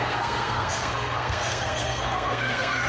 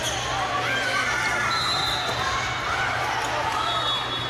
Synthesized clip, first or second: first